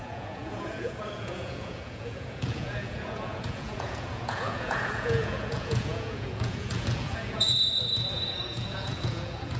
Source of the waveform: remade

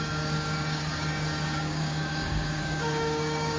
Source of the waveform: remade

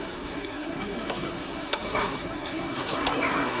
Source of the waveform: remade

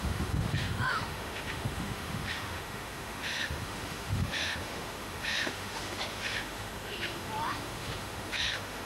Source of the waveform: remade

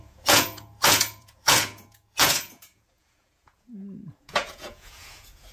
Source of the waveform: remade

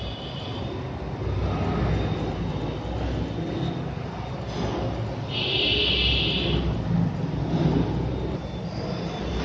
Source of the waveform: recorded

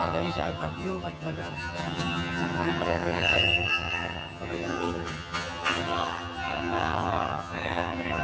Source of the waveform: remade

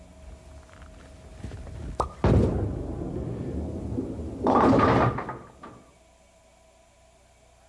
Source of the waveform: recorded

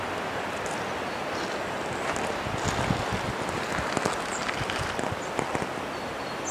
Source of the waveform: recorded